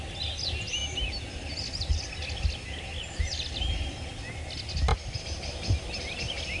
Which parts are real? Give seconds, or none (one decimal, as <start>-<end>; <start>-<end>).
0.0-6.6